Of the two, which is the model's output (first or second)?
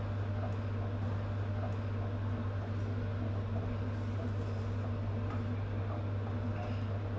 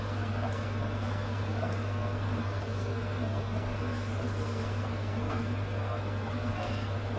second